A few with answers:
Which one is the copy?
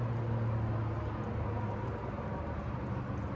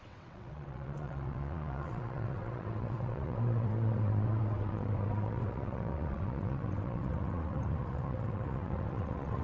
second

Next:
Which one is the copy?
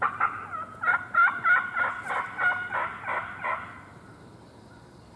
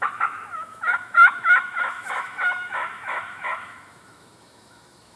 second